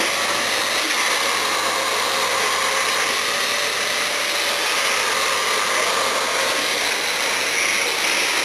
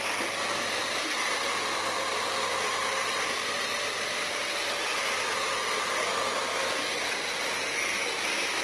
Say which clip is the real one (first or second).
first